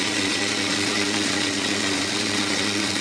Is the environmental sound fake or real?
fake